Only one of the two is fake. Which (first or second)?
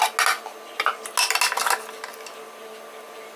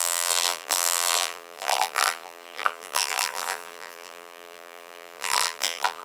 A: second